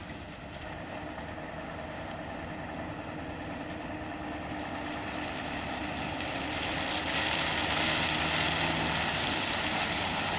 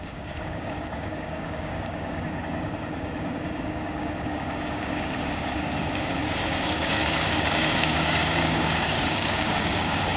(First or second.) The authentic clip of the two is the first